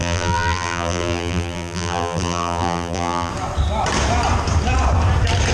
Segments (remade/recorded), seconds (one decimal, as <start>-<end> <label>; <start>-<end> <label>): 0.0-3.3 remade; 3.3-5.5 recorded